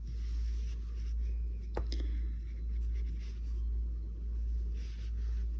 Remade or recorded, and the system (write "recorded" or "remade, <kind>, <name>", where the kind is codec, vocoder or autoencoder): recorded